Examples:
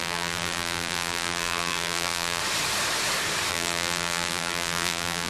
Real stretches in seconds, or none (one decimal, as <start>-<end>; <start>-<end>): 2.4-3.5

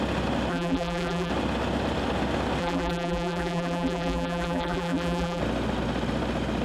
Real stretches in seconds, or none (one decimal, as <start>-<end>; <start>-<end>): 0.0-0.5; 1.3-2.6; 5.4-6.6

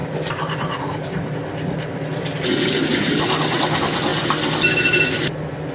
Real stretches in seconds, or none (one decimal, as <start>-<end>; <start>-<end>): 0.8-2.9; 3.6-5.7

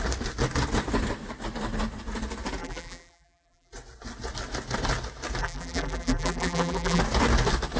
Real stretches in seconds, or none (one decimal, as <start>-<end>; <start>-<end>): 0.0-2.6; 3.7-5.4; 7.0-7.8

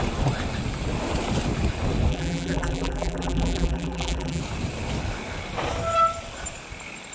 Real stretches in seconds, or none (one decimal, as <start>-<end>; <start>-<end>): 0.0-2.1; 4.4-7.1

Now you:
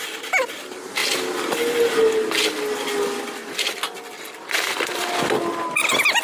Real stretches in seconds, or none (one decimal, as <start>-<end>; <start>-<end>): 0.0-6.2

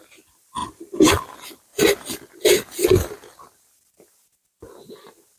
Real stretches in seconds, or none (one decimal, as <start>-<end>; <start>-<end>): 0.0-0.6; 1.2-5.4

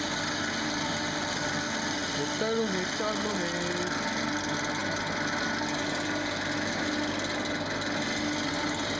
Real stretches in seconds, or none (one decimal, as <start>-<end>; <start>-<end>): 0.0-9.0